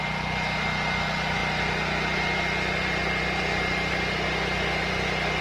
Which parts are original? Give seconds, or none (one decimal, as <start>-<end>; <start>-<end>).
0.0-5.4